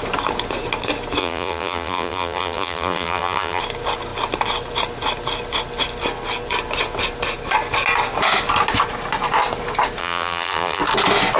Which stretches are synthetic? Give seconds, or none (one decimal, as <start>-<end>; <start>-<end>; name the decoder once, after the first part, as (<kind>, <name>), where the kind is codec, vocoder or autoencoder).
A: 1.2-3.6 (vocoder, BigVGAN v2); 10.0-10.8